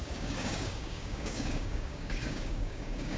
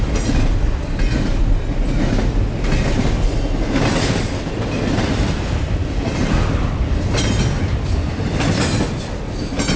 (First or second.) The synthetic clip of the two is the first